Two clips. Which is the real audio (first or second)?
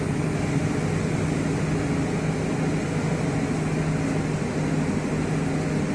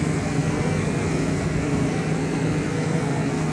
first